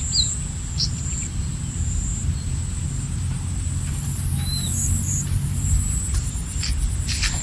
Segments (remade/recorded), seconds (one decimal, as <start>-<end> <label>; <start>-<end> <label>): 0.0-2.2 recorded; 2.2-6.6 remade; 6.6-7.4 recorded